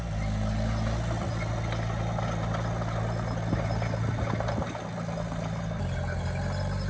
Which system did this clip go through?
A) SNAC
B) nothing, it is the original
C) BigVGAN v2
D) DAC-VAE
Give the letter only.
B